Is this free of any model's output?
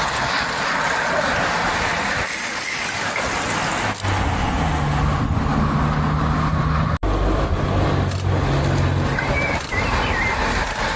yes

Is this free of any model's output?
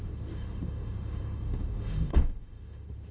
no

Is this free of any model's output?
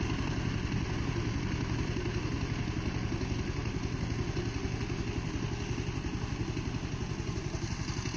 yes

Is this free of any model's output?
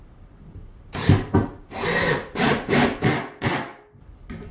yes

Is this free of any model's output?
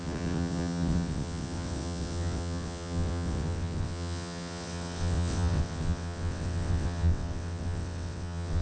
no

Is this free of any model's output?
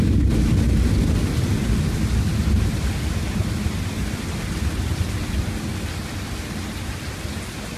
yes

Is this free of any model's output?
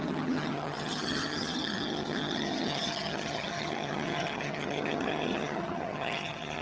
no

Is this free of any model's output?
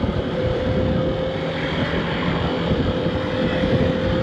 yes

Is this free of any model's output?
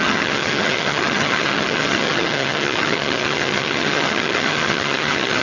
no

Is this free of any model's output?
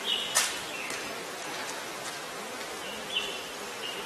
yes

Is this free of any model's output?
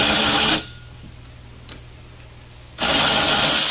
yes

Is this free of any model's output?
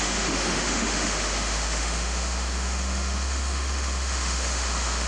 no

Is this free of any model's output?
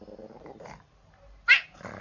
yes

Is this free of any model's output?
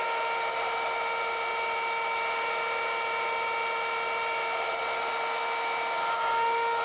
yes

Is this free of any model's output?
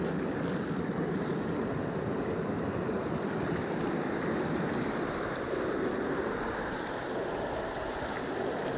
yes